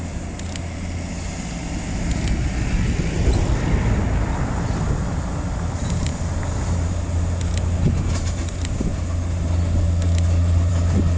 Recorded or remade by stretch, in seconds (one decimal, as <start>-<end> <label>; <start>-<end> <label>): 0.0-11.2 recorded